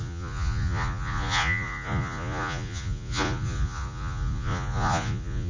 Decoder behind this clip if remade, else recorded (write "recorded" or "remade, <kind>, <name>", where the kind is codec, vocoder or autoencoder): remade, vocoder, Vocos